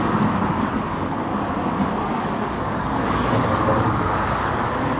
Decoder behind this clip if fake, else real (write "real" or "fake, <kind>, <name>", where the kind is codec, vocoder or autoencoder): fake, codec, DAC